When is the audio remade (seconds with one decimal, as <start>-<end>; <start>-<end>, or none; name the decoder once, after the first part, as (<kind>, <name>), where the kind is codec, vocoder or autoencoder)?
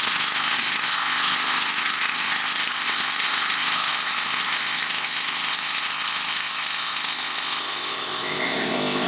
0.0-9.1 (codec, ZipCodec)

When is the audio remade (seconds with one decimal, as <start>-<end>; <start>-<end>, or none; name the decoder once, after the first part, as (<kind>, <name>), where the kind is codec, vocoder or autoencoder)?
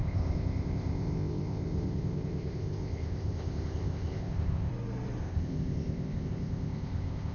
0.0-4.7 (codec, ZipCodec); 5.2-7.3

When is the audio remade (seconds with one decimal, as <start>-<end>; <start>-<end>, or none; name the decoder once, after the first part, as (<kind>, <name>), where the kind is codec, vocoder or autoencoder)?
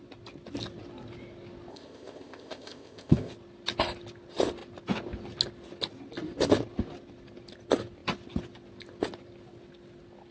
1.7-3.3 (codec, ZipCodec)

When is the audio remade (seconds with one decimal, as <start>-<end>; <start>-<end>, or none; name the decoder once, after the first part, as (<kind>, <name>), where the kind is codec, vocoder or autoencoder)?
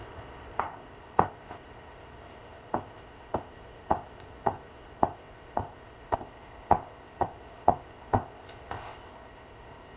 0.0-10.0 (codec, ZipCodec)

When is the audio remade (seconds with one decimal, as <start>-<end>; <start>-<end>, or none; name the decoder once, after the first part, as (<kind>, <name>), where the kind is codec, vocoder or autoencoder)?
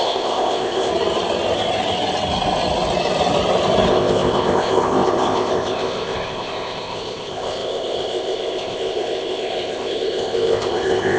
0.0-0.9 (codec, ZipCodec); 3.9-11.2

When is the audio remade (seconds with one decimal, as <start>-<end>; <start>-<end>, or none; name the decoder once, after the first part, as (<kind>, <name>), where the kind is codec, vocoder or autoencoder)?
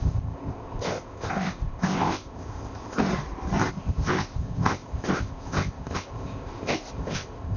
0.0-3.1 (codec, ZipCodec); 3.7-7.6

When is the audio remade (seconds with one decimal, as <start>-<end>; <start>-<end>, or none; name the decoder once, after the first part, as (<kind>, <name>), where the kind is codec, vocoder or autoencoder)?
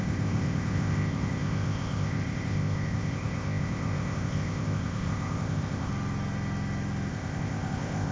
0.0-5.9 (codec, ZipCodec); 7.1-8.1